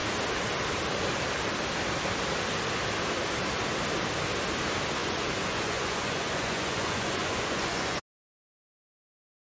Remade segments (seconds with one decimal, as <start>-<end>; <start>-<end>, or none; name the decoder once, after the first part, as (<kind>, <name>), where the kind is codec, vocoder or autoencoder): 5.0-8.0 (vocoder, Vocos)